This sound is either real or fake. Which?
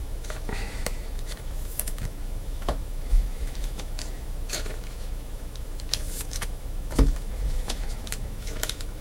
fake